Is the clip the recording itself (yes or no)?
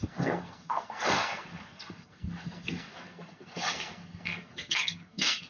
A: no